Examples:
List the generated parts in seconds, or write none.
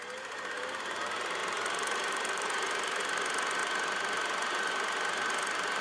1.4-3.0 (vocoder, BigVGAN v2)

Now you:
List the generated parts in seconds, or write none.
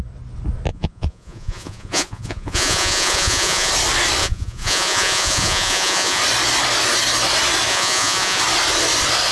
0.7-3.7 (vocoder, Vocos); 4.2-6.2; 7.7-8.4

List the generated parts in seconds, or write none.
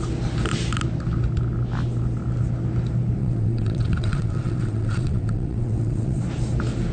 3.2-6.2 (vocoder, WaveNeXt)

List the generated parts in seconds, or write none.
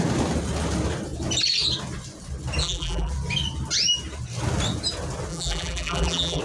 2.6-3.1 (vocoder, BigVGAN v2); 5.3-6.4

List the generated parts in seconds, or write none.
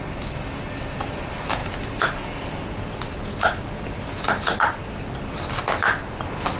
none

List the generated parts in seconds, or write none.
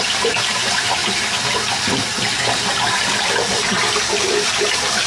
0.0-1.0 (vocoder, BigVGAN v2); 4.1-5.1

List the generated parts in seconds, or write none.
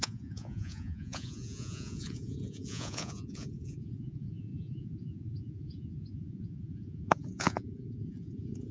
0.0-8.7 (vocoder, Vocos)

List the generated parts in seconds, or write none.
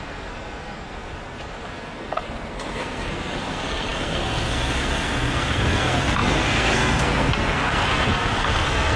0.0-9.0 (codec, SNAC)